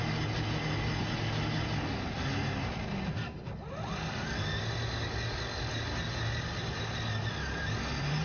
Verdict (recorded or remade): recorded